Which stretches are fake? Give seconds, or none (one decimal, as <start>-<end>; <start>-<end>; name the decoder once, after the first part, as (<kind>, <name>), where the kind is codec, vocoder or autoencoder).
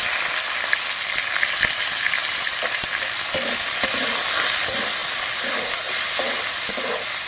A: none